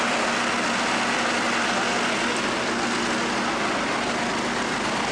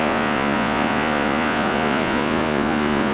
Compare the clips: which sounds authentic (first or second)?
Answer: first